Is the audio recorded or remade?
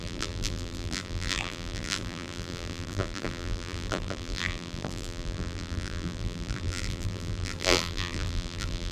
remade